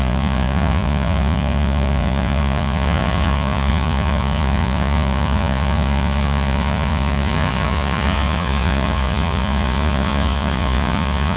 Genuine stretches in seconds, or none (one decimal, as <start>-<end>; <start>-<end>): none